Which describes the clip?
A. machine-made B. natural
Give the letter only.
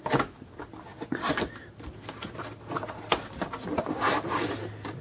B